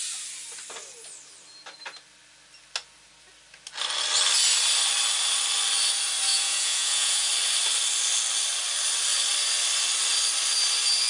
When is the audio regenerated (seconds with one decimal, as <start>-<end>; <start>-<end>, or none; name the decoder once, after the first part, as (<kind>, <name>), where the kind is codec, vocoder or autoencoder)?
6.3-7.3 (vocoder, Vocos)